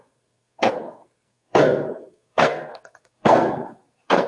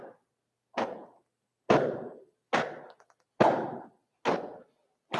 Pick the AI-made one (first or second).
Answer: first